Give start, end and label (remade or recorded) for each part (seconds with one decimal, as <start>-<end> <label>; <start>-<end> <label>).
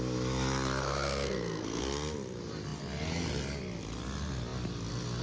0.0-0.8 recorded; 0.8-1.8 remade; 1.8-5.2 recorded